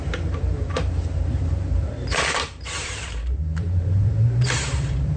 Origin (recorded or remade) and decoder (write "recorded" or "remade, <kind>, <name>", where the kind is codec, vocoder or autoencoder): remade, vocoder, BigVGAN v2